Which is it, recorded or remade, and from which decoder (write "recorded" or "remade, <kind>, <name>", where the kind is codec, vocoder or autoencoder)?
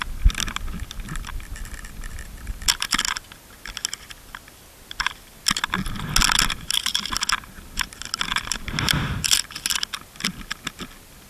recorded